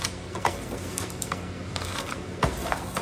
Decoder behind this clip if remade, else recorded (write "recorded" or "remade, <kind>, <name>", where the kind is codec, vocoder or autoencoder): remade, codec, SNAC